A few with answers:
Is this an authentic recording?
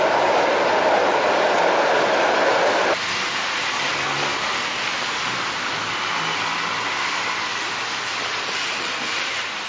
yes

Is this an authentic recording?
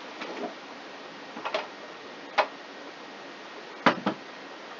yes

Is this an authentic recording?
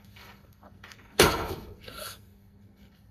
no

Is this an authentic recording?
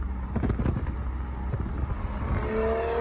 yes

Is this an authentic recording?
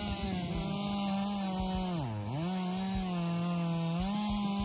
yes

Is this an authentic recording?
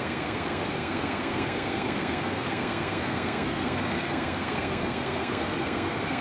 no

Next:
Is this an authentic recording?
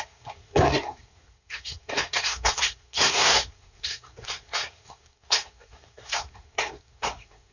no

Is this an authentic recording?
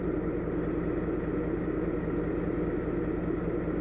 yes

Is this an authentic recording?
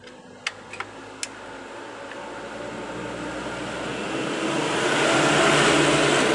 yes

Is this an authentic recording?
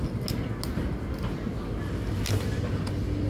yes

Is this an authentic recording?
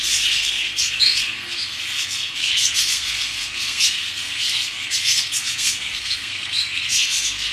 no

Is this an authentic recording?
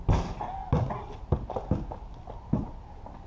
yes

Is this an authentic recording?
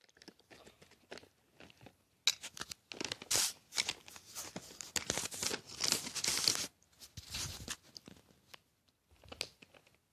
yes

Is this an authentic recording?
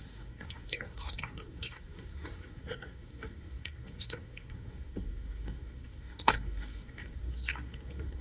no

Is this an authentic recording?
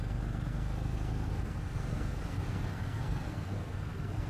no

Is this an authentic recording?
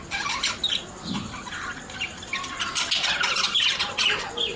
yes